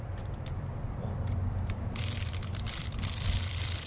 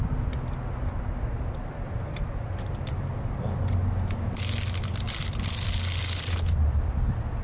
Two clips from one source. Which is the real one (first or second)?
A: second